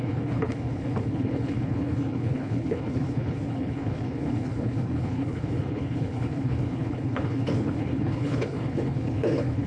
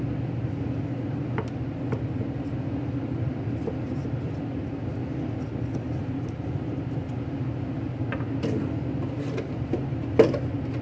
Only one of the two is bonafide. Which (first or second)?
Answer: second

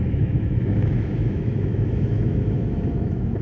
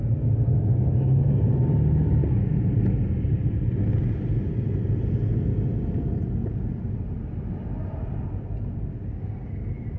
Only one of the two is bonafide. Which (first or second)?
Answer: second